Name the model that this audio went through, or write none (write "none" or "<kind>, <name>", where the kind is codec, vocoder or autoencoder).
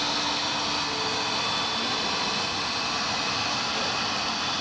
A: none